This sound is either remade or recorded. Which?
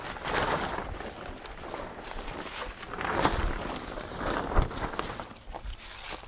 recorded